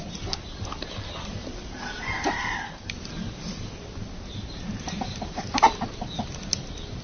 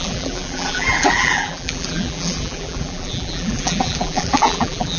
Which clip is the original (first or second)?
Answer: first